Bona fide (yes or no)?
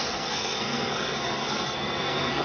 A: no